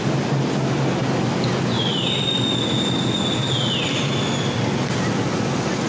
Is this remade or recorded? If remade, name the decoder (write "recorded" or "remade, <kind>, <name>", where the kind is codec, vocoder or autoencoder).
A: recorded